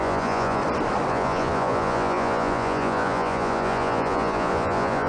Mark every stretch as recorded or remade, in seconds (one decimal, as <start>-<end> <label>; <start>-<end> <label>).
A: 0.0-0.6 remade; 0.6-1.1 recorded; 1.1-5.1 remade